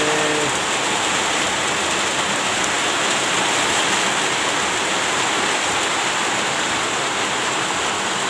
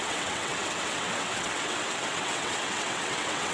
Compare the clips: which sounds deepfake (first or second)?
second